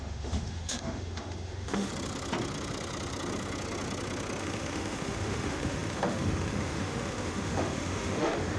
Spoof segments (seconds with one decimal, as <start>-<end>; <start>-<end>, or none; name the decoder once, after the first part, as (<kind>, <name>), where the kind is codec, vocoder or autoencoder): 0.0-1.9 (autoencoder, DAC-VAE); 4.4-8.6